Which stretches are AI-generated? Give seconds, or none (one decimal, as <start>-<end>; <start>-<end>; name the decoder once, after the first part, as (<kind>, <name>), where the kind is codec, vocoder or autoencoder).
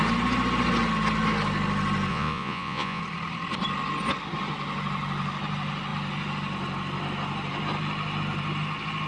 2.1-3.0 (vocoder, Vocos)